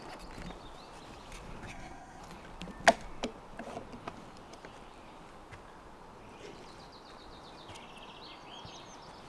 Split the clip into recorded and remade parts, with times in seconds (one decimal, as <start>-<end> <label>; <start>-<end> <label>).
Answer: 0.0-1.7 recorded; 1.7-2.2 remade; 2.2-9.3 recorded